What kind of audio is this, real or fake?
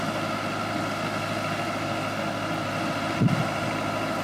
real